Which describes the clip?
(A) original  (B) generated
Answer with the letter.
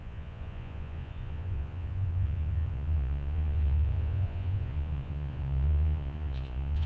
B